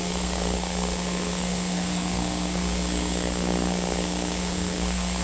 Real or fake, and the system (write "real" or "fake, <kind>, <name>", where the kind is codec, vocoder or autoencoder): fake, codec, SNAC